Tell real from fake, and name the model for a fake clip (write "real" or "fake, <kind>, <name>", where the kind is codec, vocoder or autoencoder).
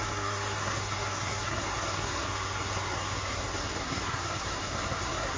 fake, codec, SNAC